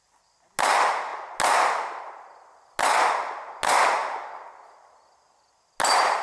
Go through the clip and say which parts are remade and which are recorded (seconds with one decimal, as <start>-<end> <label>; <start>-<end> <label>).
0.0-6.2 recorded